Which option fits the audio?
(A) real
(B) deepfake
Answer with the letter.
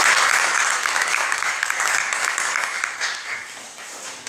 B